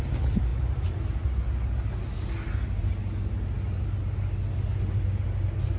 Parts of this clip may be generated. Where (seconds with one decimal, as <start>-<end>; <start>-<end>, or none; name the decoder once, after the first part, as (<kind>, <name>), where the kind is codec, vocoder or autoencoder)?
none